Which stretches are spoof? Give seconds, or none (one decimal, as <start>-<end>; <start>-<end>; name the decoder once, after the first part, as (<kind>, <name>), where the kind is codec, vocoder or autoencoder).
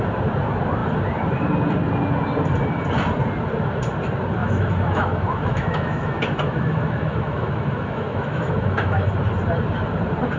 4.4-9.1 (autoencoder, DAC-VAE)